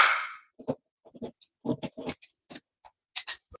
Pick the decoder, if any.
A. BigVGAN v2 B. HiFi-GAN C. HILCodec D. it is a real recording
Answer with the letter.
D